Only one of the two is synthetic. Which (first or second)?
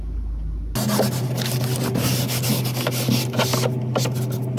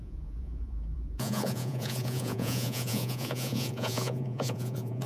second